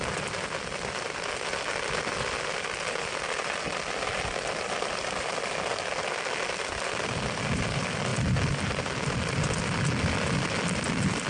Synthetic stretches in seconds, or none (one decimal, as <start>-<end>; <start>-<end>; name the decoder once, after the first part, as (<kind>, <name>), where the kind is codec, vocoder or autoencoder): none